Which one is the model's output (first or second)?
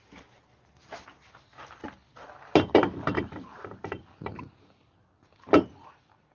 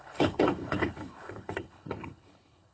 second